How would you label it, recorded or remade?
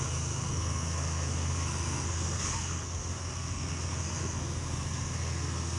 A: remade